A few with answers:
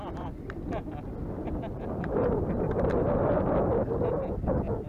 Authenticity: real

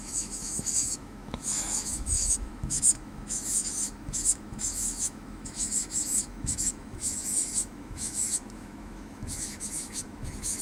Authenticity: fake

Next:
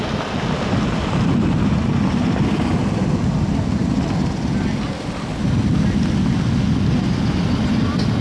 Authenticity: real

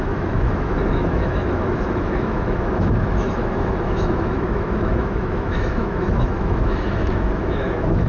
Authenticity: fake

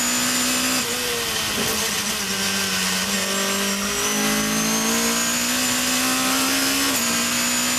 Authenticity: real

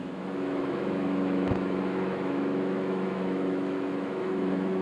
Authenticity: fake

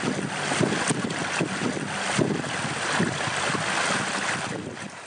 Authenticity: real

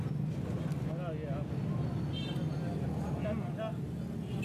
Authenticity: real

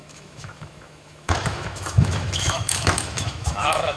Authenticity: fake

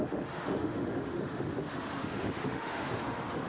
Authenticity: fake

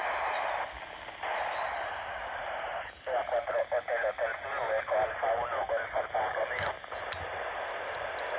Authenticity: real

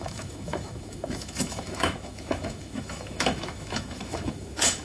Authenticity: fake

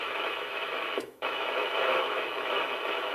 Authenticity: fake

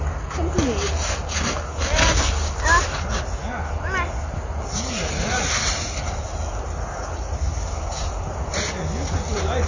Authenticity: real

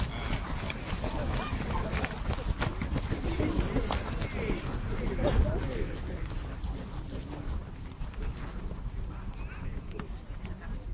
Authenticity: real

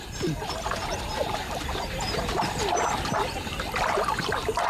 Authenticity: real